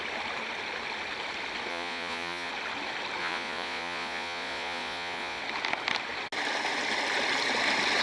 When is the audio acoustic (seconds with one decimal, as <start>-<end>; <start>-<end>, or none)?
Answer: 0.0-1.7; 2.5-3.2; 5.4-8.0

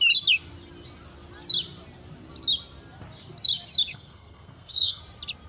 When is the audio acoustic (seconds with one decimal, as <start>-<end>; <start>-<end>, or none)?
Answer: 0.0-3.9; 5.0-5.5

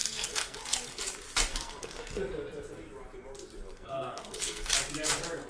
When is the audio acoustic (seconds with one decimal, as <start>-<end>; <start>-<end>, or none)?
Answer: 1.0-1.5; 2.2-3.7; 4.7-5.5

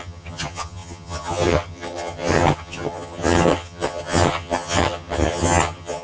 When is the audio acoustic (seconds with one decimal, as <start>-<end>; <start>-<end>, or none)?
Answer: none

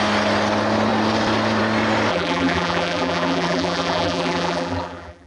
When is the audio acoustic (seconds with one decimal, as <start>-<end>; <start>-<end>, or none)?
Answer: 0.0-2.1

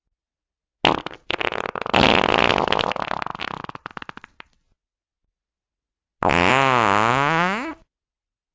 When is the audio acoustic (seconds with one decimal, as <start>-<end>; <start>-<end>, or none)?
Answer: 0.0-7.1; 7.7-8.5

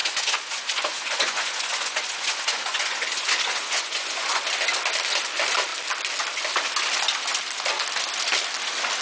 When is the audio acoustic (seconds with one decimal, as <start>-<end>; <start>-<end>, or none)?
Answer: 4.4-9.0

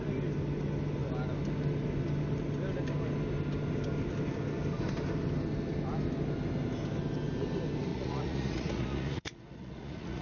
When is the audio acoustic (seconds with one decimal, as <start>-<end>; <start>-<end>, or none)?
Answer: 0.0-7.9